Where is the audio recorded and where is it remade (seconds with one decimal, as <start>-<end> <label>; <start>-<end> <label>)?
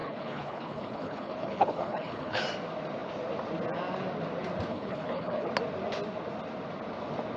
0.0-2.4 remade; 2.4-4.7 recorded; 4.7-5.5 remade; 5.5-7.4 recorded